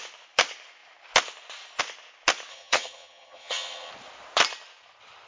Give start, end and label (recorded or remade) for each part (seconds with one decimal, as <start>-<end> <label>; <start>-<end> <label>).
0.0-2.5 recorded; 2.5-3.9 remade; 3.9-5.3 recorded